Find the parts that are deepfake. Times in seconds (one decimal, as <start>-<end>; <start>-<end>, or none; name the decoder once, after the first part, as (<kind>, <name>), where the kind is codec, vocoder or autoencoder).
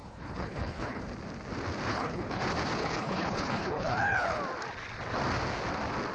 0.0-1.0 (codec, HILCodec); 1.9-2.4; 2.8-4.4